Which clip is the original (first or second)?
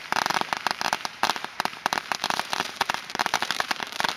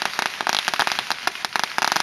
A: second